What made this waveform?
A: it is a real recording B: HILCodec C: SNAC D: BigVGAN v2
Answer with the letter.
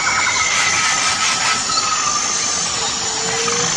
A